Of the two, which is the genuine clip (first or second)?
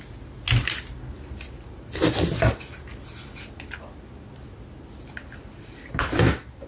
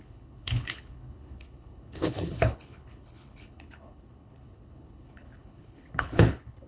first